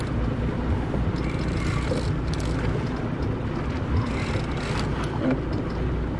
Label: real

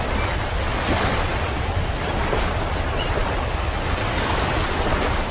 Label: real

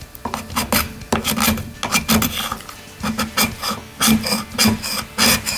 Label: real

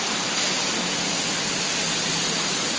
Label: real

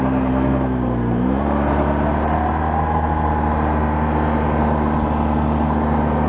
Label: real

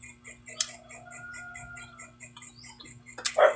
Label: real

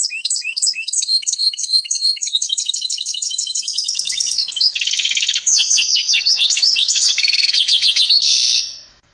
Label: fake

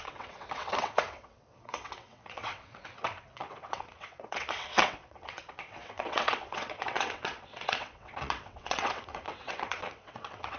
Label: fake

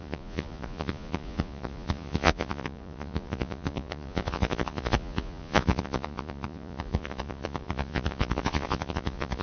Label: fake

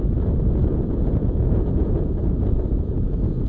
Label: fake